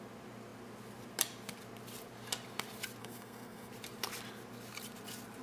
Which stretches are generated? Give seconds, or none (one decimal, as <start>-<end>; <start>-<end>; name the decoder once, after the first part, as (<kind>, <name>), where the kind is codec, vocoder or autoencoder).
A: 3.0-3.7 (codec, SNAC)